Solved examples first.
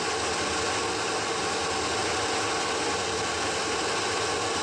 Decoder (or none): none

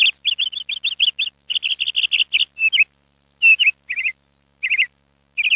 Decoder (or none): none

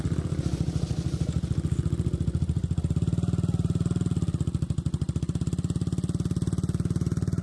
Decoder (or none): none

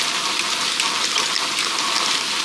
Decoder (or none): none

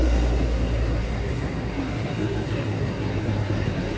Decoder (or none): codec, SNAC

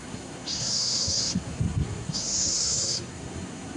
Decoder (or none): codec, SNAC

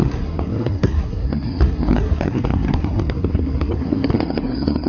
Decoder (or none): codec, SNAC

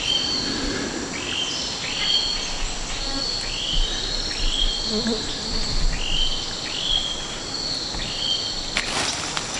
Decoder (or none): none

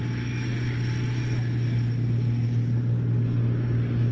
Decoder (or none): none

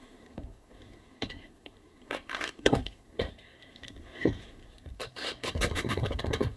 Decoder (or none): codec, SNAC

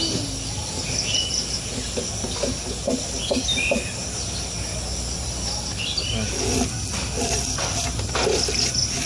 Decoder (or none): none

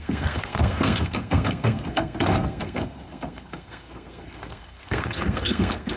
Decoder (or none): codec, SNAC